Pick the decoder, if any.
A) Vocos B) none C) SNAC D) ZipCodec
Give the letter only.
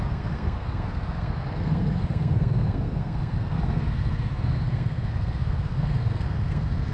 C